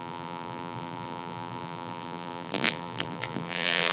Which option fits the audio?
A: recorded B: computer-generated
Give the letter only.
B